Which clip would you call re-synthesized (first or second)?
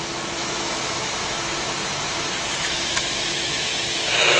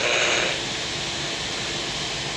first